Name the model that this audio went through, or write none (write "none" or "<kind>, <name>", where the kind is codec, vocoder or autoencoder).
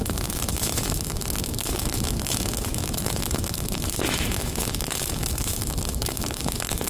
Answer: autoencoder, DAC-VAE